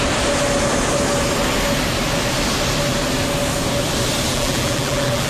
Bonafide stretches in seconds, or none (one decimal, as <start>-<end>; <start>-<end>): 0.0-4.3